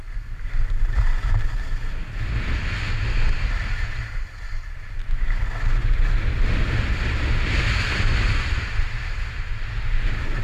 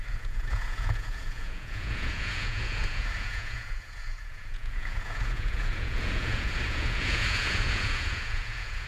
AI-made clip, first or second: second